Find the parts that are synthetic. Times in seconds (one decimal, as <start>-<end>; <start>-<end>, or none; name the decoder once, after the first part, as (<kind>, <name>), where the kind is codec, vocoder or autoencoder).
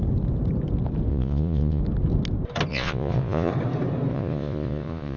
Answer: 1.1-1.8 (vocoder, Vocos); 2.7-3.5; 4.1-5.2